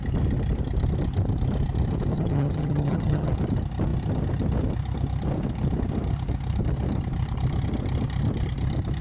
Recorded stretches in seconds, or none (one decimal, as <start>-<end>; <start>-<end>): 0.0-2.1; 3.3-9.0